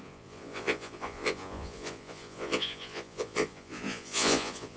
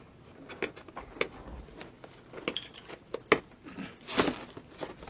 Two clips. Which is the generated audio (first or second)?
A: first